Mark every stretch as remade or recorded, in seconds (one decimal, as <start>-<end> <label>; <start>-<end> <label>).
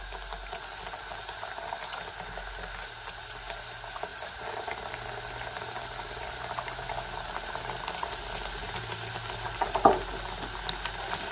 0.0-6.9 recorded; 6.9-9.9 remade; 9.9-11.3 recorded